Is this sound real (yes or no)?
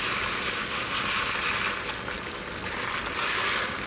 yes